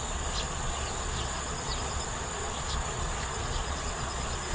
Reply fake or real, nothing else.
fake